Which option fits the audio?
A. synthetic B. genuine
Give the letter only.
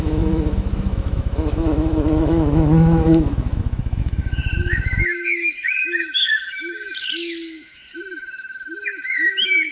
A